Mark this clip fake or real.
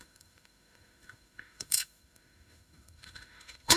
fake